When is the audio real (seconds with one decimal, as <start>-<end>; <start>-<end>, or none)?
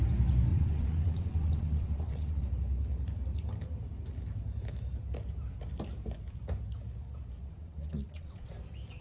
0.0-0.5; 2.4-7.5; 8.5-9.0